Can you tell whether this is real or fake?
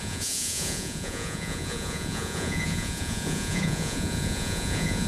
fake